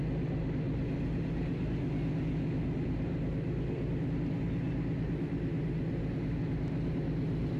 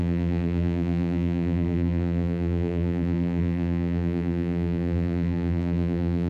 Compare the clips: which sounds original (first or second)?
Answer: first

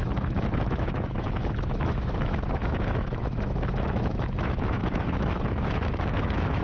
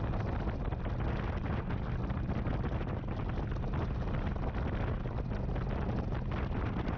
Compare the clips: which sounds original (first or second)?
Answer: second